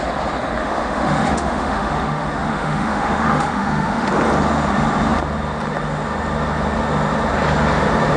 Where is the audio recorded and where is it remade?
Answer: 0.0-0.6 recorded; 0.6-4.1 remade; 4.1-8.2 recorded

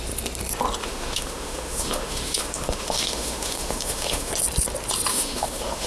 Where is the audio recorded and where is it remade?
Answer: 0.0-0.8 recorded; 0.8-4.3 remade; 4.3-5.1 recorded; 5.1-5.9 remade

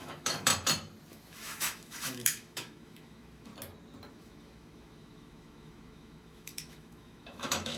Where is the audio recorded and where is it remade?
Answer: 0.0-0.5 remade; 0.5-1.1 recorded; 1.1-3.5 remade; 3.5-4.1 recorded; 4.1-7.8 remade

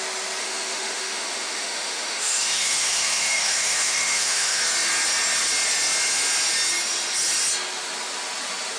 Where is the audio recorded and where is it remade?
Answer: 0.0-0.4 recorded; 0.4-4.6 remade; 4.6-8.8 recorded

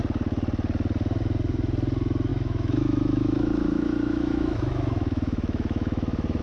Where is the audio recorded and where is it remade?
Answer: 0.0-2.3 recorded; 2.3-6.4 remade